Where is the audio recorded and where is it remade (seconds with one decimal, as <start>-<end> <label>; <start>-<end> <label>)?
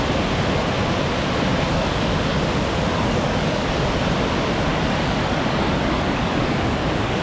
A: 0.0-1.5 recorded; 1.5-2.4 remade; 2.4-2.9 recorded; 2.9-3.8 remade; 3.8-4.7 recorded; 4.7-7.2 remade